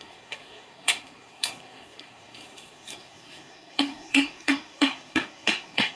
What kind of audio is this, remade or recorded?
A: remade